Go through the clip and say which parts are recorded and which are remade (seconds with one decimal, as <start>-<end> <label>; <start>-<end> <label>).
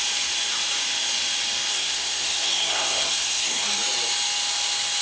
0.0-1.7 recorded; 1.7-3.6 remade; 3.6-5.0 recorded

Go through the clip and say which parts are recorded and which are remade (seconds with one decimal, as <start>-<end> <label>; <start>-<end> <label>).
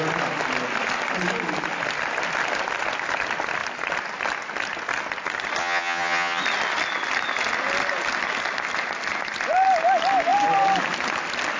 0.0-5.6 recorded; 5.6-6.4 remade; 6.4-11.6 recorded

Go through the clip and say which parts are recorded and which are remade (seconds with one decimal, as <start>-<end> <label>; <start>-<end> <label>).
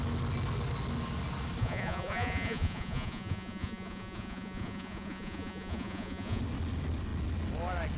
0.0-1.6 recorded; 1.6-6.4 remade; 6.4-8.0 recorded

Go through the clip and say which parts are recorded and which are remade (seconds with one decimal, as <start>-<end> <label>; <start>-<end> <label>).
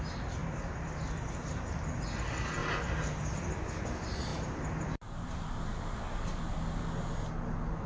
0.0-0.4 recorded; 0.4-1.3 remade; 1.3-2.6 recorded; 2.6-3.4 remade; 3.4-4.3 recorded; 4.3-6.0 remade; 6.0-7.9 recorded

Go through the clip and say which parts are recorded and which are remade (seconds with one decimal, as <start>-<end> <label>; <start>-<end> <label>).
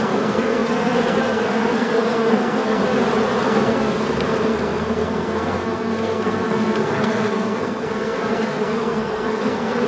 0.0-2.8 remade; 2.8-3.4 recorded; 3.4-9.9 remade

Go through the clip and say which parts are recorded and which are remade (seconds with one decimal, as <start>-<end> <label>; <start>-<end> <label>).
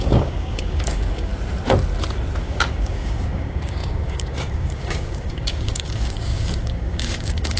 0.0-1.3 remade; 1.3-2.4 recorded; 2.4-7.6 remade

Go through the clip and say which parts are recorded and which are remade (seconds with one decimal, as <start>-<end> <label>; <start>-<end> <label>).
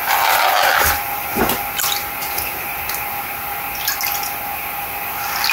0.0-5.5 recorded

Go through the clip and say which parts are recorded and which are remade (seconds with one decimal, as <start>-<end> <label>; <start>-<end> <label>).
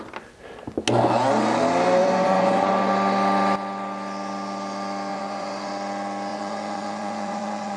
0.0-2.0 recorded; 2.0-2.7 remade; 2.7-5.1 recorded; 5.1-5.7 remade; 5.7-6.3 recorded; 6.3-7.8 remade